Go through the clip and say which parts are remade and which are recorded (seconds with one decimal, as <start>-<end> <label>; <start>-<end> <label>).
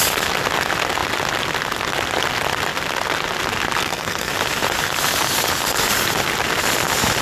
0.0-3.8 recorded; 3.8-4.3 remade; 4.3-7.2 recorded